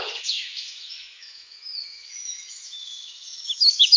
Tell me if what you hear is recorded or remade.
remade